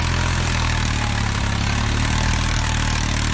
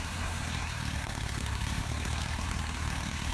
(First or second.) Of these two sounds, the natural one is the first